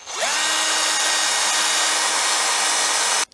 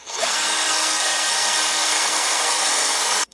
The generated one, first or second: second